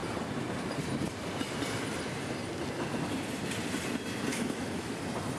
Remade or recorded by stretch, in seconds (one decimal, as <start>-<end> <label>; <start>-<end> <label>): 0.0-4.3 recorded; 4.3-5.0 remade; 5.0-5.4 recorded